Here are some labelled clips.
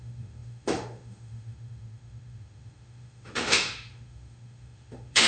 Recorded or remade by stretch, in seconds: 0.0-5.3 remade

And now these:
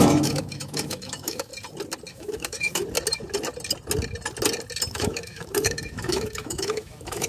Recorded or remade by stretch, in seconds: 0.0-1.5 remade; 1.5-2.1 recorded; 2.1-2.8 remade; 2.8-4.9 recorded; 4.9-7.3 remade

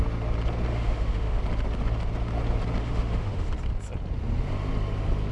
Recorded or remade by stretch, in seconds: 0.0-0.7 recorded; 0.7-1.4 remade; 1.4-2.8 recorded; 2.8-3.5 remade; 3.5-5.3 recorded